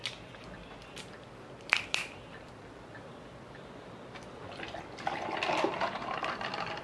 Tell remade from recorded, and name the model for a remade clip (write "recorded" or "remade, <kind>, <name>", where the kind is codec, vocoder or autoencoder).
remade, vocoder, BigVGAN v2